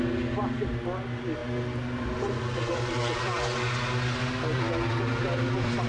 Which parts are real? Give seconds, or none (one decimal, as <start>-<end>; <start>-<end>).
0.0-5.9